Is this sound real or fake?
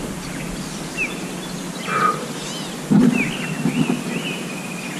real